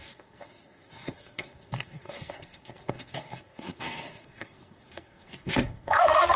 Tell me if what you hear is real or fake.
fake